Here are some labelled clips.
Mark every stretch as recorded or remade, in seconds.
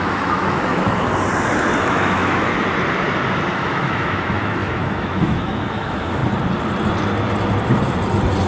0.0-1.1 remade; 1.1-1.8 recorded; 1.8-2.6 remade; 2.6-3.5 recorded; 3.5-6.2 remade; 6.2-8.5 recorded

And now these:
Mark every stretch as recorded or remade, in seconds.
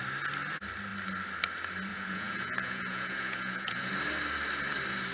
0.0-1.9 recorded; 1.9-3.9 remade; 3.9-5.1 recorded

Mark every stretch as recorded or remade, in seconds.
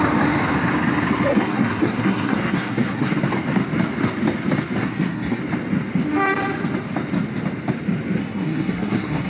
0.0-1.3 recorded; 1.3-3.2 remade; 3.2-4.8 recorded; 4.8-5.4 remade; 5.4-8.2 recorded; 8.2-9.3 remade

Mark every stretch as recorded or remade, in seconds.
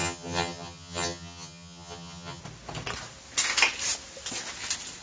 0.0-2.4 remade; 2.4-5.0 recorded